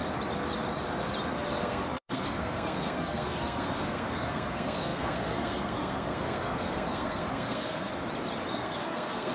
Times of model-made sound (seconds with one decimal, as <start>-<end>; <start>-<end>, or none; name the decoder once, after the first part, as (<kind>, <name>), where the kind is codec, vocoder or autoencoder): 1.6-7.9 (codec, SNAC); 8.5-9.3